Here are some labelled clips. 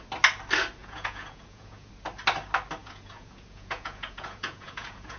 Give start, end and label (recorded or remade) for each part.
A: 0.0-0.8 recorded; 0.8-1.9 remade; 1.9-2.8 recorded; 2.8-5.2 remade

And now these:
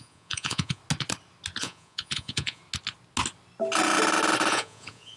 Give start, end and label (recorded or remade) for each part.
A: 0.0-0.8 remade; 0.8-1.6 recorded; 1.6-2.6 remade; 2.6-4.5 recorded; 4.5-5.2 remade

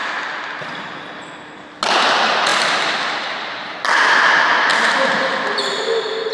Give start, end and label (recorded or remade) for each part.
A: 0.0-6.3 recorded

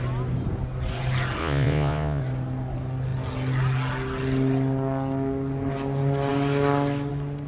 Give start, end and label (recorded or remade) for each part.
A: 0.0-1.4 recorded; 1.4-2.2 remade; 2.2-7.5 recorded

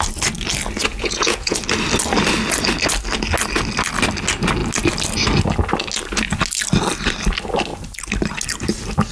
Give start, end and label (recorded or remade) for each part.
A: 0.0-0.9 recorded; 0.9-1.6 remade; 1.6-9.1 recorded

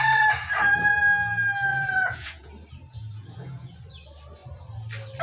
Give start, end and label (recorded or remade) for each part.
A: 0.0-1.7 recorded; 1.7-2.5 remade; 2.5-2.9 recorded; 2.9-3.7 remade; 3.7-5.2 recorded

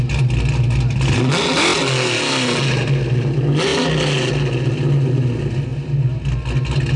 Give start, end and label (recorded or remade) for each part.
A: 0.0-7.0 recorded

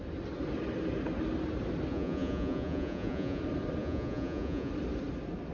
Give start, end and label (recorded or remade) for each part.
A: 0.0-1.9 recorded; 1.9-3.4 remade; 3.4-3.8 recorded; 3.8-4.7 remade; 4.7-5.5 recorded